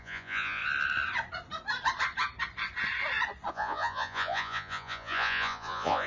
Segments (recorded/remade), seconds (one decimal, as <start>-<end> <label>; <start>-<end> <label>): 0.0-0.6 remade; 0.6-3.5 recorded; 3.5-6.1 remade